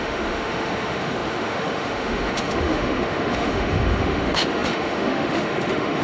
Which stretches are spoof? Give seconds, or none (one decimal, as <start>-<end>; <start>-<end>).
0.0-6.0